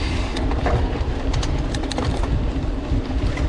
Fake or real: fake